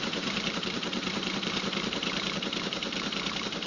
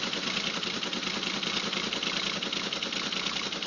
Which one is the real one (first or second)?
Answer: second